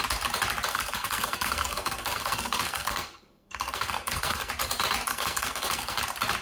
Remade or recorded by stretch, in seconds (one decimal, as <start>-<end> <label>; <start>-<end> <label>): 0.0-0.7 recorded; 0.7-4.5 remade; 4.5-5.1 recorded; 5.1-6.0 remade; 6.0-6.4 recorded